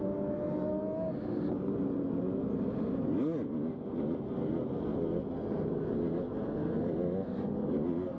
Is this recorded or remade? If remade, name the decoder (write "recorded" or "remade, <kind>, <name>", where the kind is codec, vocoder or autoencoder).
recorded